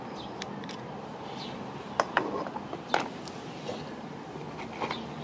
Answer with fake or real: real